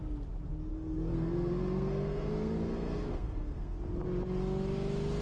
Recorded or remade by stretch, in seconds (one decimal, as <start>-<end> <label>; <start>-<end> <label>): 0.0-0.7 recorded; 0.7-3.8 remade; 3.8-5.2 recorded